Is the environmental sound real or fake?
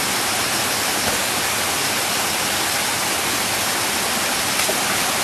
real